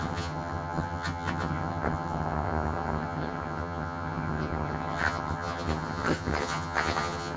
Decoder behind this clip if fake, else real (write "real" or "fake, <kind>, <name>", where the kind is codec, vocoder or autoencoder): fake, vocoder, HiFi-GAN